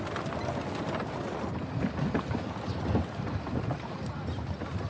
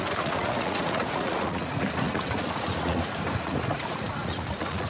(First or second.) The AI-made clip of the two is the second